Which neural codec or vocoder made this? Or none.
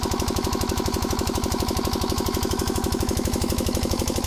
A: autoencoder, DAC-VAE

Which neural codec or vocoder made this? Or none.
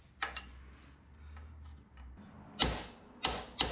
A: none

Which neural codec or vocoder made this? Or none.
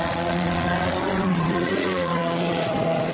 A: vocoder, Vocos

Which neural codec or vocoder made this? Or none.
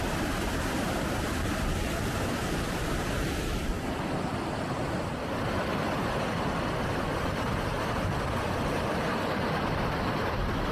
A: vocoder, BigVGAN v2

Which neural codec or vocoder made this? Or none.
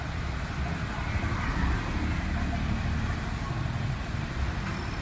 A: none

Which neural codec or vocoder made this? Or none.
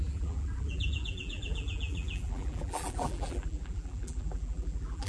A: vocoder, BigVGAN v2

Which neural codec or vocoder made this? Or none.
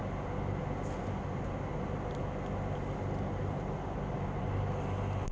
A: none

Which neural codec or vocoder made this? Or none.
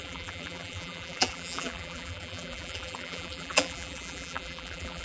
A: vocoder, BigVGAN v2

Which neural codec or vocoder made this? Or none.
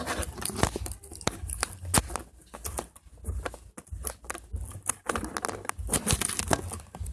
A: none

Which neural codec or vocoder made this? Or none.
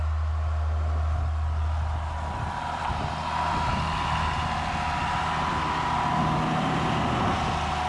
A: none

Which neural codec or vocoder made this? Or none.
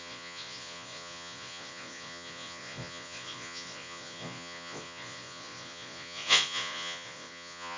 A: vocoder, Vocos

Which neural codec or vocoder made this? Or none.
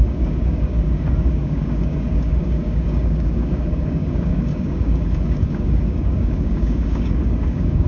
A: codec, DAC